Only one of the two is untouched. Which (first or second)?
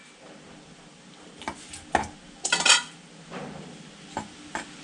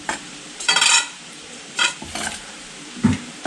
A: first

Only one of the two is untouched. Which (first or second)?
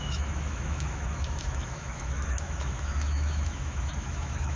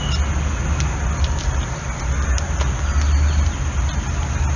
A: second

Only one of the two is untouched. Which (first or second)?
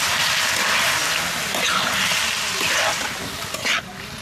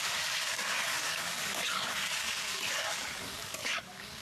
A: first